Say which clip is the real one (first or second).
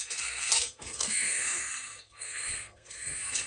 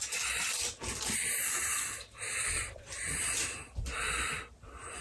second